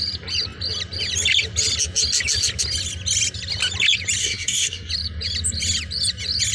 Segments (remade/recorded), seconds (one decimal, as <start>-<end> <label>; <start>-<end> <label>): 0.0-4.2 recorded; 4.2-4.9 remade; 4.9-6.5 recorded